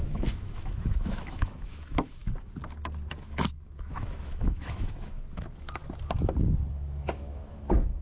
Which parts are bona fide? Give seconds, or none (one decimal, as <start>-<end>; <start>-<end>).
2.2-3.1; 5.8-6.7